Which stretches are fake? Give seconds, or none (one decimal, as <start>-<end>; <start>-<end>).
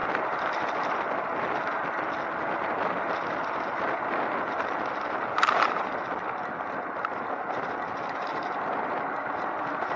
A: none